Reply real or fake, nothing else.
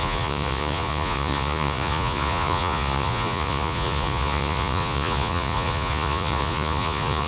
fake